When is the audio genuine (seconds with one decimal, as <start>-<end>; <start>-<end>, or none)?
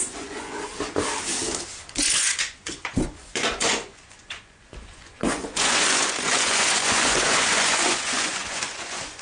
0.7-1.8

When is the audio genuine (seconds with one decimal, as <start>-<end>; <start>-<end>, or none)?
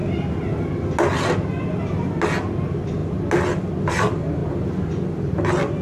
0.0-5.8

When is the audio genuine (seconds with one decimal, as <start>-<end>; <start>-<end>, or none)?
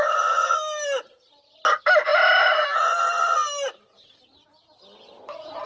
0.0-5.7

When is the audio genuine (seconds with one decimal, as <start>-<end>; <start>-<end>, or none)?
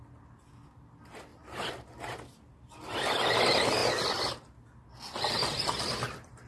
0.0-6.5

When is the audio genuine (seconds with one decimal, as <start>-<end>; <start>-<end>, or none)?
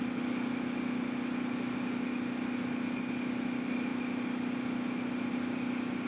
0.0-6.1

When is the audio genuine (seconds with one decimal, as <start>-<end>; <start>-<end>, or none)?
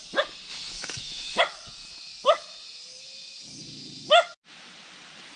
0.0-0.5; 1.4-5.4